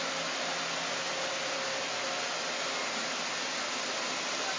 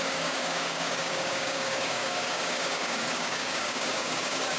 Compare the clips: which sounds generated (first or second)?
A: second